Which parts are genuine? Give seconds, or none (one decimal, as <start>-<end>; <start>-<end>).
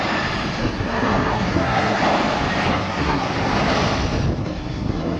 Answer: 0.0-0.6; 2.0-2.7; 3.3-4.4